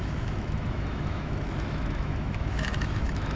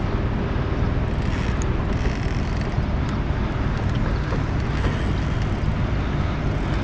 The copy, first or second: first